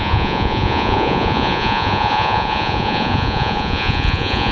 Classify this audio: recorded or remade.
remade